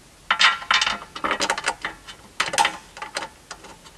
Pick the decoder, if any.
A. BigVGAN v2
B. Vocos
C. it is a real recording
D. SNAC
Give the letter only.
C